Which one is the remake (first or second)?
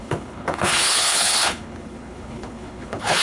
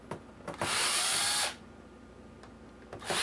first